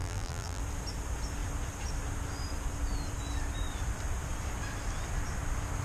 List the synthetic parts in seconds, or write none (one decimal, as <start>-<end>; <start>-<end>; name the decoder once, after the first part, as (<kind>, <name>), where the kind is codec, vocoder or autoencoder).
0.0-0.6 (vocoder, BigVGAN v2)